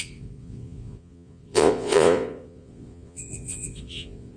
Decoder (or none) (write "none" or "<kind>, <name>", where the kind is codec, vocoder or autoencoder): vocoder, Vocos